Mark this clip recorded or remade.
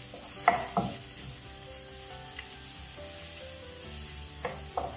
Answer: recorded